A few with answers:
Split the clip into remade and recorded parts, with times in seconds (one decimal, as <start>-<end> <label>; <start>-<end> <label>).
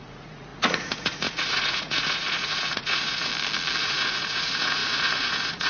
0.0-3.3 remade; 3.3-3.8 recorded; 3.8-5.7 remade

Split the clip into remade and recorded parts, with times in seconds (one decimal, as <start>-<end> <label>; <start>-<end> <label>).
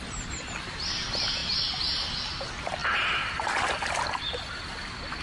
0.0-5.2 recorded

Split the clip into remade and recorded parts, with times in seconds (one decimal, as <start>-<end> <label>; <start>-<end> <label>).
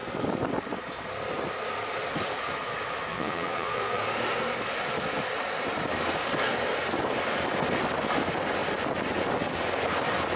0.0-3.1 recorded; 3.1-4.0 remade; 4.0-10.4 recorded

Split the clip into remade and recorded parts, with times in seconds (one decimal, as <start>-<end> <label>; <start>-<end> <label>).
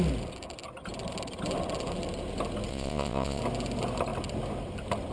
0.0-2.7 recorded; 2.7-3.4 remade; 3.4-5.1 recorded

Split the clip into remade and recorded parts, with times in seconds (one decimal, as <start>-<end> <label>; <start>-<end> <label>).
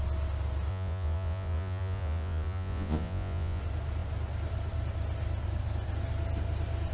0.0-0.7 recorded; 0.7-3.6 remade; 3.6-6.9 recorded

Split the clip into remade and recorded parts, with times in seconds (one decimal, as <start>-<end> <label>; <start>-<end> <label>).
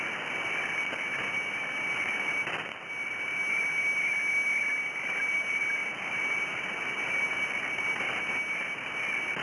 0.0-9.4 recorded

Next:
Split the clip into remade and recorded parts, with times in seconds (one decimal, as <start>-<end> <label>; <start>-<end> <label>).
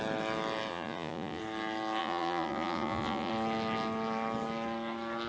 0.0-0.7 recorded; 0.7-1.4 remade; 1.4-2.0 recorded; 2.0-3.3 remade; 3.3-5.3 recorded